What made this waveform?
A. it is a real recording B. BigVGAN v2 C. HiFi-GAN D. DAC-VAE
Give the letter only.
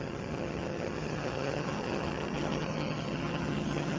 C